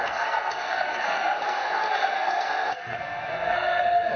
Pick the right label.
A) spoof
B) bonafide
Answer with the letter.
A